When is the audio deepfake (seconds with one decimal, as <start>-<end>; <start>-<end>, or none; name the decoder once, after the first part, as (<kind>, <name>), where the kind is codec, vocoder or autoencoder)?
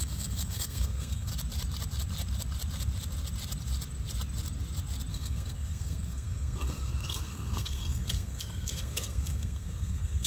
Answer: 0.0-1.3 (codec, SNAC); 5.1-10.3